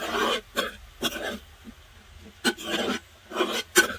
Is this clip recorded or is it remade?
recorded